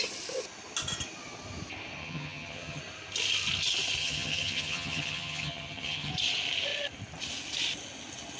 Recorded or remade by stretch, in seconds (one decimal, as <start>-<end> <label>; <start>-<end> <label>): 0.0-2.0 recorded; 2.0-2.8 remade; 2.8-4.0 recorded; 4.0-6.1 remade; 6.1-8.4 recorded